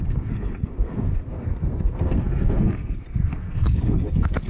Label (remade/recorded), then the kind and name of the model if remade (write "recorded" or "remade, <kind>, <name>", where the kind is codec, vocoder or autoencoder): remade, codec, SNAC